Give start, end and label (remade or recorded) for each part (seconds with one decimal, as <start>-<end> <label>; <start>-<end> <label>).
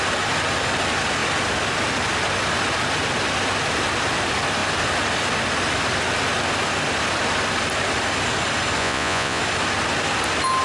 0.0-8.8 recorded; 8.8-9.4 remade; 9.4-10.6 recorded